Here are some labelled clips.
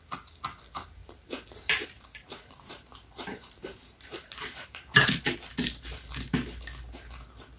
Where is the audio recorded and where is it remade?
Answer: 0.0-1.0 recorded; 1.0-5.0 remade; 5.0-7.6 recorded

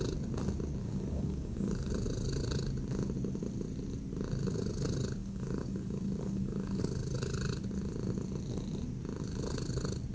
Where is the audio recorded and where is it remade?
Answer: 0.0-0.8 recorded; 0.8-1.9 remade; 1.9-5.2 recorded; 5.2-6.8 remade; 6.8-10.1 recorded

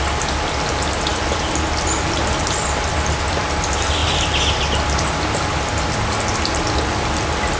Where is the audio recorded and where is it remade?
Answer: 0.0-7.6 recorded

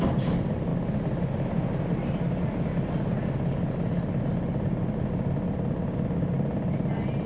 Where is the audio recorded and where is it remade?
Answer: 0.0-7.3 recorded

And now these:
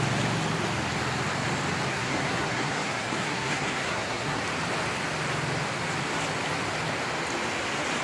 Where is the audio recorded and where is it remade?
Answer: 0.0-1.9 recorded; 1.9-4.4 remade; 4.4-8.0 recorded

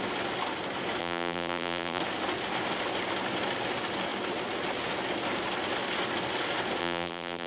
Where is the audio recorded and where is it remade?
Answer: 0.0-1.0 recorded; 1.0-2.0 remade; 2.0-6.8 recorded; 6.8-7.5 remade

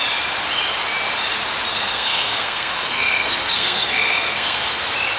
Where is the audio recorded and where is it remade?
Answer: 0.0-1.7 recorded; 1.7-4.8 remade; 4.8-5.2 recorded